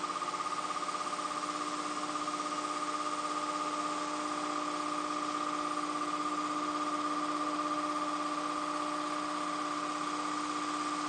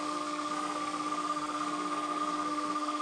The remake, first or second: second